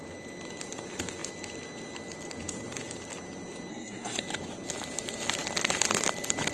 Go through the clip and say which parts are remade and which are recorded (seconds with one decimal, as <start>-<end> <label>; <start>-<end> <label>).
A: 0.0-3.7 recorded; 3.7-4.2 remade; 4.2-6.5 recorded